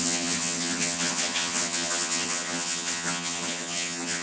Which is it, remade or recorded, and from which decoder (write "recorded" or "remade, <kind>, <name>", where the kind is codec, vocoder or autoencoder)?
remade, vocoder, HiFi-GAN